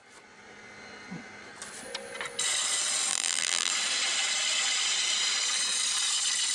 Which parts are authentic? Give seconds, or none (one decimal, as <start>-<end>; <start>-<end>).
0.0-3.1; 3.7-6.5